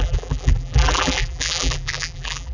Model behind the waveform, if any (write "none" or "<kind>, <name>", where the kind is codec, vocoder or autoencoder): vocoder, BigVGAN v2